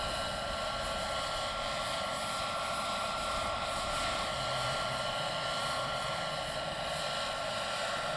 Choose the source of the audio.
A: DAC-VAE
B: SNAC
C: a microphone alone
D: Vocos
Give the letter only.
C